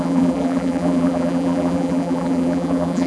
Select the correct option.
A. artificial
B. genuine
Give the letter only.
A